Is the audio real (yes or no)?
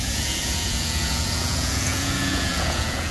no